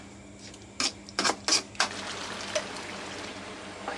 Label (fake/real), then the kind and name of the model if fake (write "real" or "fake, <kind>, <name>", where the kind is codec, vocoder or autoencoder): real